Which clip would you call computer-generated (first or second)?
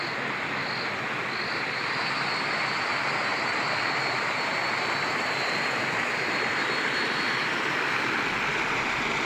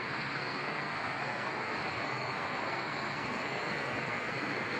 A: second